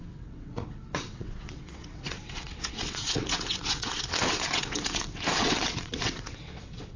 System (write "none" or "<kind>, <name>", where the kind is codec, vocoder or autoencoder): vocoder, WaveNeXt